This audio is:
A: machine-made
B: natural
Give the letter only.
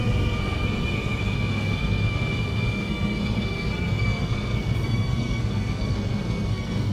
A